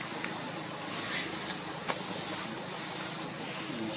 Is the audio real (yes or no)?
yes